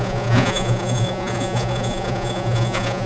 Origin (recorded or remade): remade